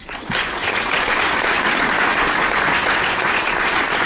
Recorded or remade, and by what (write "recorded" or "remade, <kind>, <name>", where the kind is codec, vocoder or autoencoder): remade, vocoder, Vocos